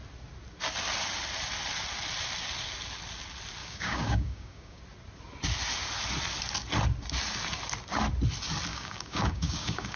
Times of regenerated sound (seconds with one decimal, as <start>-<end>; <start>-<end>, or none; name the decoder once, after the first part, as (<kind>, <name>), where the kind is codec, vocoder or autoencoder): 3.6-4.8 (codec, DAC); 8.7-10.0